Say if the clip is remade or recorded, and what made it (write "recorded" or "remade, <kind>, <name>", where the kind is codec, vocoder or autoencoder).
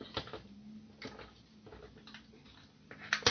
recorded